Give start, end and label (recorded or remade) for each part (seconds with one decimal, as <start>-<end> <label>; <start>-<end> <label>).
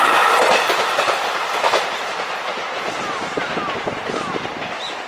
0.0-1.4 recorded; 1.4-4.5 remade; 4.5-5.1 recorded